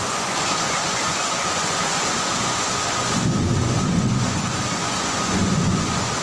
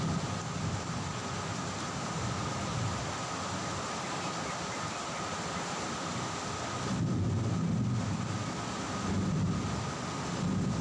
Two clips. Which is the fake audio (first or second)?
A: first